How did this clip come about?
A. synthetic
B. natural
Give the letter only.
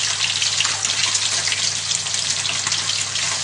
B